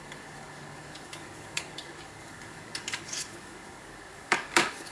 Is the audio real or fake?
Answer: fake